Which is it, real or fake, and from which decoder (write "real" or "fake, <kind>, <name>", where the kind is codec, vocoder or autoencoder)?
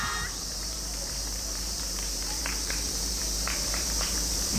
fake, vocoder, BigVGAN v2